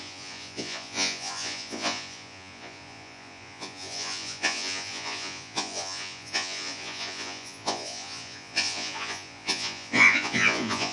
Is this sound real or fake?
fake